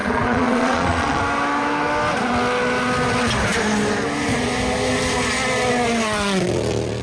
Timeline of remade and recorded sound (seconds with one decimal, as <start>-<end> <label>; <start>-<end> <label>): 0.0-1.2 remade; 1.2-7.0 recorded